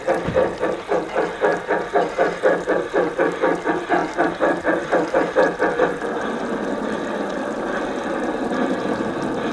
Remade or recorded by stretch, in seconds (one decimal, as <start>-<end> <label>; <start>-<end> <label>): 0.0-9.5 recorded